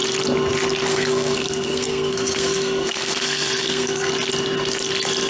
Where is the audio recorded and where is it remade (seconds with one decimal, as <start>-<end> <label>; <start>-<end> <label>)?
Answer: 0.0-0.9 recorded; 0.9-4.1 remade; 4.1-5.3 recorded